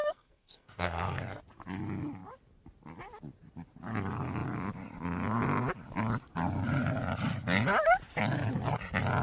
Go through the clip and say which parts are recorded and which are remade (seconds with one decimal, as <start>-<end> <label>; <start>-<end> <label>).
0.0-1.4 remade; 1.4-9.2 recorded